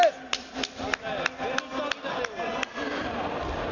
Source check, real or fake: real